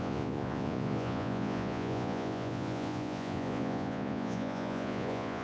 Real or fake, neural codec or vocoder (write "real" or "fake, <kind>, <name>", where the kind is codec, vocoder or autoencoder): fake, vocoder, Vocos